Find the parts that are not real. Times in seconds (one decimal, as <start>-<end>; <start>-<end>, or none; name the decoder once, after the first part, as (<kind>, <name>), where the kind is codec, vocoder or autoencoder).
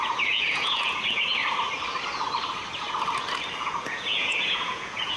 0.0-1.4 (vocoder, Vocos); 3.6-5.2